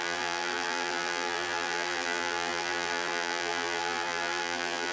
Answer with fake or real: fake